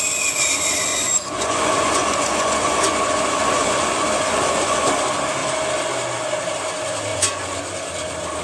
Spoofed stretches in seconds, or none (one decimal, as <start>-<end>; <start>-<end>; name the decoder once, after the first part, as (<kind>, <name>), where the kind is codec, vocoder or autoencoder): 0.9-4.9 (vocoder, Vocos); 7.1-7.6